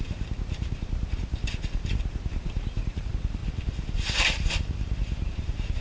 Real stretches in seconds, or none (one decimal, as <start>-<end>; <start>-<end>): 3.4-5.3